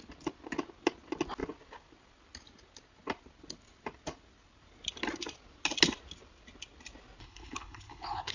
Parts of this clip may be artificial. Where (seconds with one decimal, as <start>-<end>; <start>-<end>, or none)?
7.2-8.3